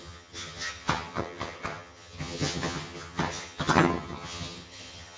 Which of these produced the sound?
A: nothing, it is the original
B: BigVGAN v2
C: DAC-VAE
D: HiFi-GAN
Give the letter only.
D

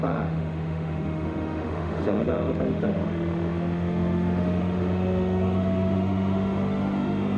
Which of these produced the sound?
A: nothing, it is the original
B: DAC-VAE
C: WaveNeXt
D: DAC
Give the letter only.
B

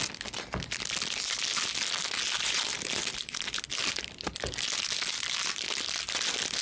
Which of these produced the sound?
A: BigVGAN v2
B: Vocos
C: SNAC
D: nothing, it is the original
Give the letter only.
D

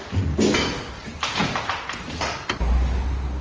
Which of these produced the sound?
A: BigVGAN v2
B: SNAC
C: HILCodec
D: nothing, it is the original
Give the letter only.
D